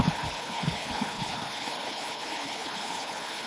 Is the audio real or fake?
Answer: fake